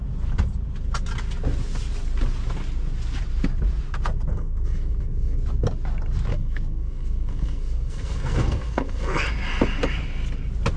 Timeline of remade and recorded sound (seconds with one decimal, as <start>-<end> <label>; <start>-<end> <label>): 0.0-4.3 recorded; 4.3-5.4 remade; 5.4-6.3 recorded; 6.3-9.3 remade; 9.3-10.8 recorded